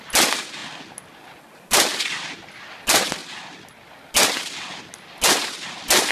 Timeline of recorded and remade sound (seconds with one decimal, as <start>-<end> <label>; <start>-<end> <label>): 0.0-6.1 recorded